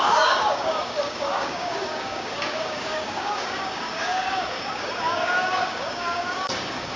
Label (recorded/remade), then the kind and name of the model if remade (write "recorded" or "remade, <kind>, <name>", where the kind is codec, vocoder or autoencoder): remade, codec, DAC